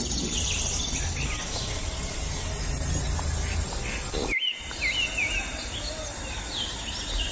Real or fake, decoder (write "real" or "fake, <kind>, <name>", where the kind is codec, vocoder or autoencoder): real